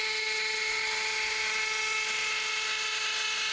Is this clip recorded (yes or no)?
yes